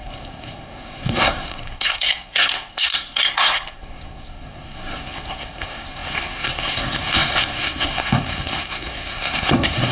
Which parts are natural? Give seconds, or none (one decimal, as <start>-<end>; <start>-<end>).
none